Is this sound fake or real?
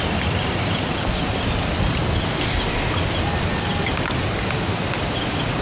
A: real